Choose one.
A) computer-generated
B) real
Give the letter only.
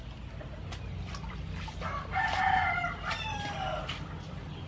B